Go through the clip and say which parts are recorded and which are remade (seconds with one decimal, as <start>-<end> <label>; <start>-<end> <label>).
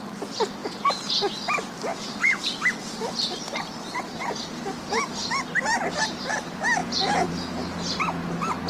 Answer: 0.0-0.6 recorded; 0.6-1.2 remade; 1.2-1.9 recorded; 1.9-2.4 remade; 2.4-6.8 recorded; 6.8-7.3 remade; 7.3-8.7 recorded